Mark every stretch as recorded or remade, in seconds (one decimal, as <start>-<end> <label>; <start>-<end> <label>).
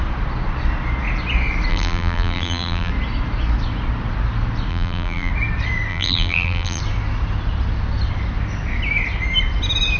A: 0.0-1.7 recorded; 1.7-2.9 remade; 2.9-4.7 recorded; 4.7-5.3 remade; 5.3-5.9 recorded; 5.9-6.8 remade; 6.8-10.0 recorded